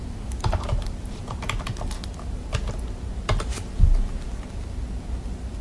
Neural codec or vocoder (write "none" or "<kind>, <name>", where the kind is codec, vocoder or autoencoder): none